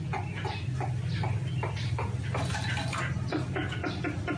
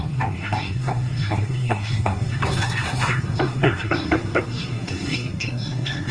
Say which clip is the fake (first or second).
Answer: second